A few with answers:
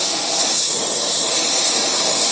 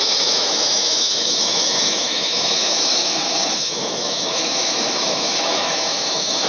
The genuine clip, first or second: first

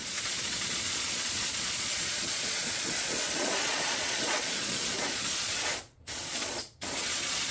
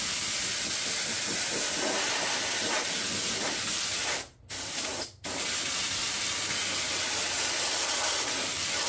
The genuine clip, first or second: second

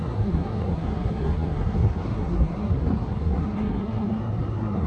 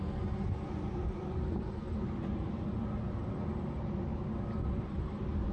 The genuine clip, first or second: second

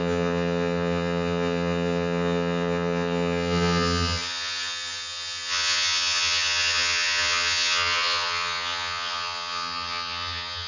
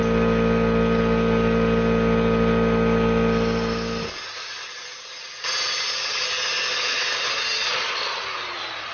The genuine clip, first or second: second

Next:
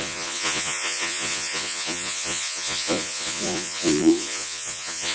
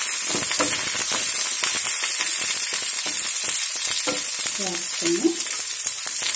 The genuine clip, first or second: second